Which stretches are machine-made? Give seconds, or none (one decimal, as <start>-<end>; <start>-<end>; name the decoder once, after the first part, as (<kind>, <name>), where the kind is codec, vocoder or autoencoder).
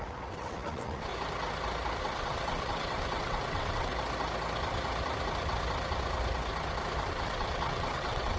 0.0-1.1 (vocoder, WaveNeXt); 2.0-3.9; 7.1-8.4